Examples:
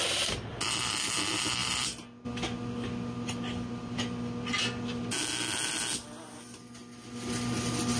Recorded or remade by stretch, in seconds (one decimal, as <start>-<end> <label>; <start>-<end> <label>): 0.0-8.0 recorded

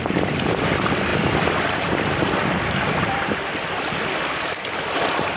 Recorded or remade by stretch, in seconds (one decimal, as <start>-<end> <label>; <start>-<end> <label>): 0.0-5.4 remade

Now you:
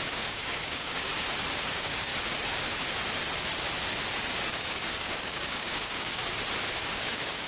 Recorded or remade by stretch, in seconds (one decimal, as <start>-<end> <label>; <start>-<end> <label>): 0.0-1.1 remade; 1.1-1.7 recorded; 1.7-2.1 remade; 2.1-4.5 recorded; 4.5-6.2 remade; 6.2-6.7 recorded; 6.7-7.5 remade

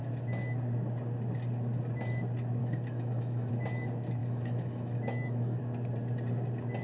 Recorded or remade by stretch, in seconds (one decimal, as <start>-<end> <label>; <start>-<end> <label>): 0.0-2.6 recorded; 2.6-3.5 remade; 3.5-4.2 recorded; 4.2-5.6 remade; 5.6-6.8 recorded

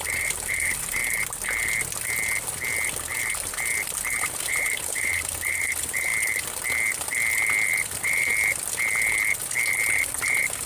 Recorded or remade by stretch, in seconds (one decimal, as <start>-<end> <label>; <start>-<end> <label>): 0.0-1.0 remade; 1.0-4.2 recorded; 4.2-6.1 remade; 6.1-7.9 recorded; 7.9-8.3 remade; 8.3-10.0 recorded; 10.0-10.7 remade